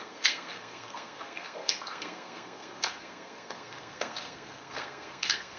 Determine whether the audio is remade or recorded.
remade